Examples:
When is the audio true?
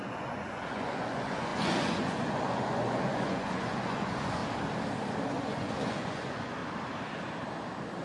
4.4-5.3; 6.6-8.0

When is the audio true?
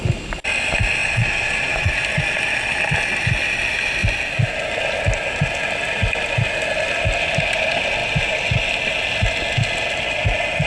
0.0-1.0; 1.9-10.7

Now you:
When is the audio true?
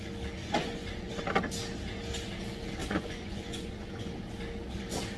0.0-0.4; 1.2-2.8; 4.1-5.2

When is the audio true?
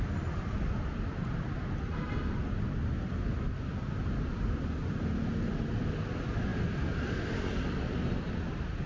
0.0-8.9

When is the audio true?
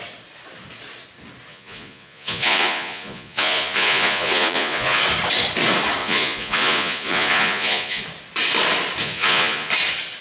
0.0-1.5; 5.0-6.0; 8.0-9.0; 9.7-10.2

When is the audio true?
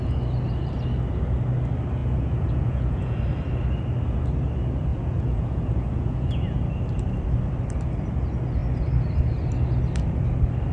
0.0-2.0; 3.2-4.9; 6.6-10.7